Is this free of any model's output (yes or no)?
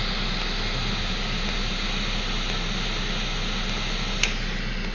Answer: yes